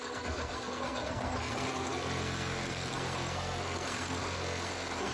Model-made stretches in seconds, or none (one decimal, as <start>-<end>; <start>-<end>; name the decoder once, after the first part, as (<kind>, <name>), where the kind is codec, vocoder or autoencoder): 0.0-5.1 (codec, SNAC)